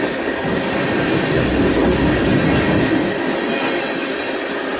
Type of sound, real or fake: real